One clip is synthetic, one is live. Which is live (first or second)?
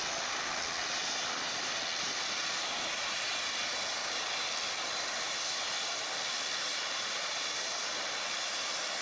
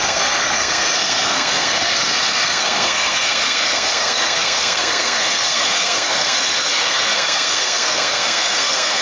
first